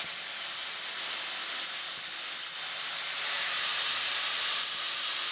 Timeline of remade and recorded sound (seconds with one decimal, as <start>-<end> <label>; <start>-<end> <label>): 0.0-5.3 recorded